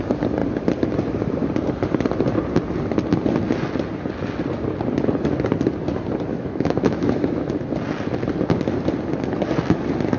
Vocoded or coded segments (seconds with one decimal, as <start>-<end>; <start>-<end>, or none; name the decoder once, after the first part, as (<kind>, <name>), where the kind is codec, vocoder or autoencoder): 6.3-7.5 (autoencoder, DAC-VAE)